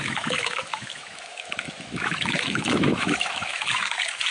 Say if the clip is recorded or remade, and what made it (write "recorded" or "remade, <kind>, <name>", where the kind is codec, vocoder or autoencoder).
remade, autoencoder, DAC-VAE